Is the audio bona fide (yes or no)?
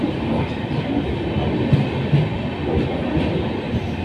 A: yes